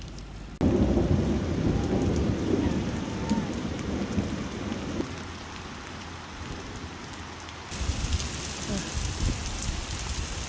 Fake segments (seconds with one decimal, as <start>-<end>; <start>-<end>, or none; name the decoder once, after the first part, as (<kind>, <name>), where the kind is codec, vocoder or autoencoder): none